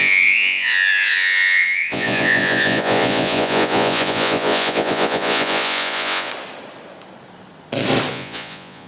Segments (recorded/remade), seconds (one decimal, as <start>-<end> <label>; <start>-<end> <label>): 0.0-6.3 remade; 6.3-8.1 recorded; 8.1-8.9 remade